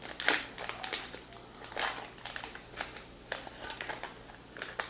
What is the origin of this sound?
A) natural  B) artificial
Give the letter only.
A